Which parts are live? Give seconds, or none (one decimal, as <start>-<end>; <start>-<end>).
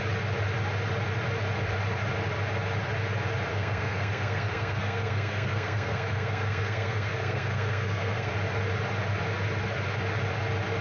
0.0-3.5; 8.3-10.8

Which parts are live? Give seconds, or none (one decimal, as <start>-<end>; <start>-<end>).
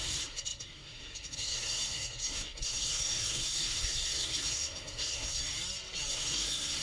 5.4-6.1